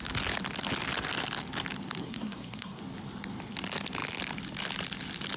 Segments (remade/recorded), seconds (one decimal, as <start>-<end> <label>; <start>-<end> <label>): 0.0-2.0 recorded; 2.0-2.8 remade; 2.8-5.4 recorded

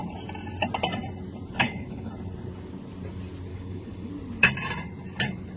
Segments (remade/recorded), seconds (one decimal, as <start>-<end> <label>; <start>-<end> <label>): 0.0-1.6 recorded; 1.6-2.1 remade; 2.1-3.5 recorded; 3.5-4.1 remade; 4.1-5.6 recorded

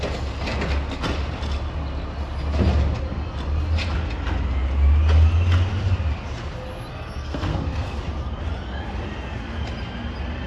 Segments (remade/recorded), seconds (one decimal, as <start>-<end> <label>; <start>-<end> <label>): 0.0-6.9 recorded; 6.9-8.0 remade; 8.0-10.5 recorded

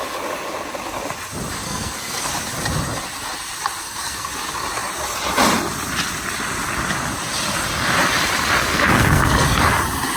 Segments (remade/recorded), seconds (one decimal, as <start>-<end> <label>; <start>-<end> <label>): 0.0-1.6 recorded; 1.6-2.3 remade; 2.3-3.8 recorded; 3.8-4.3 remade; 4.3-8.7 recorded; 8.7-9.6 remade; 9.6-10.2 recorded

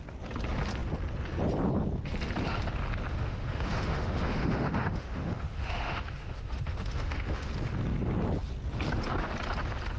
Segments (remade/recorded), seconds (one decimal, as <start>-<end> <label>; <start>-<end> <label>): 0.0-3.1 recorded; 3.1-7.5 remade; 7.5-10.0 recorded

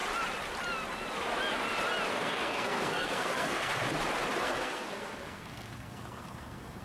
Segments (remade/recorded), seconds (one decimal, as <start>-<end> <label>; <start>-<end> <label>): 0.0-2.1 recorded; 2.1-3.7 remade; 3.7-4.4 recorded; 4.4-6.8 remade

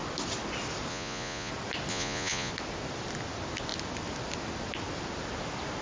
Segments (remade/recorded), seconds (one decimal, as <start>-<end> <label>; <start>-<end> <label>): 0.0-0.9 recorded; 0.9-1.5 remade; 1.5-1.9 recorded; 1.9-2.5 remade; 2.5-5.8 recorded

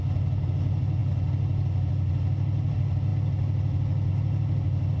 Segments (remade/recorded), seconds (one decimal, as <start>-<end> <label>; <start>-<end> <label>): 0.0-5.0 recorded